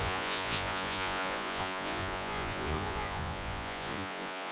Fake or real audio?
fake